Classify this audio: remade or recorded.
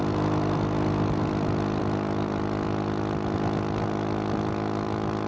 recorded